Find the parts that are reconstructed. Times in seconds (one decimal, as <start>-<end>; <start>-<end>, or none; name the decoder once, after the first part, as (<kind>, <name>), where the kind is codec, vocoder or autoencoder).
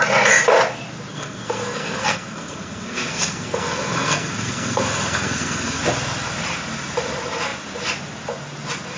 1.1-5.8 (codec, SNAC)